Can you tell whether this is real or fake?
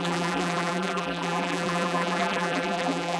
fake